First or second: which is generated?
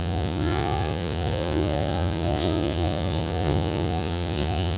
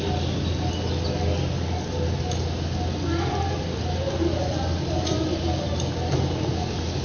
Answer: first